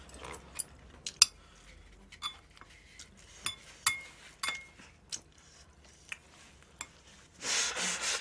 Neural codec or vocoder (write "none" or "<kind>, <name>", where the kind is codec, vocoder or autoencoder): none